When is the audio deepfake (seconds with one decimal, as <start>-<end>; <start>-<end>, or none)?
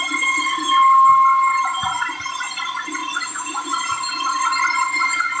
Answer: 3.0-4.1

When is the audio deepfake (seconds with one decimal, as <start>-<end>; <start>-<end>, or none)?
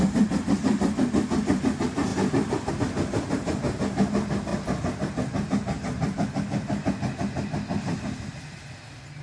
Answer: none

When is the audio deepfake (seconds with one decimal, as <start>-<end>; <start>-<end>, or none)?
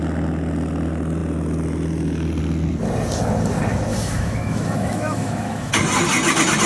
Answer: 3.9-5.7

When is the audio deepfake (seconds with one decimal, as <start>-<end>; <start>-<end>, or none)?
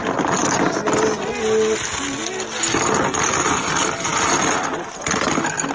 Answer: none